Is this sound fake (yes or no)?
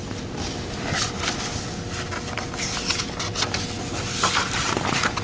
no